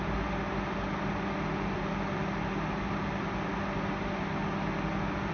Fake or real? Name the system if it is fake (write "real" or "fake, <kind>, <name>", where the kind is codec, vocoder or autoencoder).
real